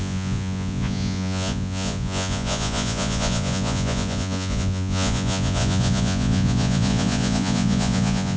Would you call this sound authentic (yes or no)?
no